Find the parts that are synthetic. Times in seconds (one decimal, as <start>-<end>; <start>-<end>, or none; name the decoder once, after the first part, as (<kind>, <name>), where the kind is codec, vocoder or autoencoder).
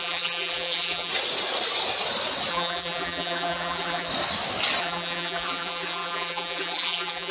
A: 0.0-1.1 (vocoder, BigVGAN v2); 2.5-4.1; 4.8-7.3